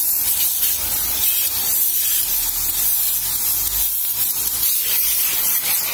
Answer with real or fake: real